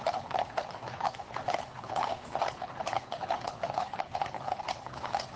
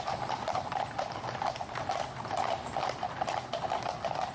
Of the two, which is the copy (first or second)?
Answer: first